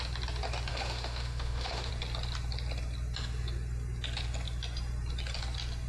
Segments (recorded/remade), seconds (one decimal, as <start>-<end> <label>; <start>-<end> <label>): 0.0-0.7 recorded; 0.7-1.9 remade; 1.9-5.9 recorded